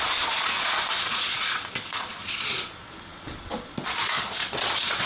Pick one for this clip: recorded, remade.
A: remade